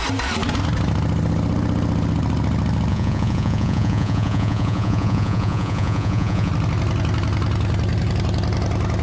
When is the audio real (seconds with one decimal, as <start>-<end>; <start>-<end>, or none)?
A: 0.0-2.9; 6.5-9.0